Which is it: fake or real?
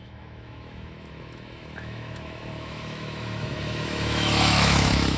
fake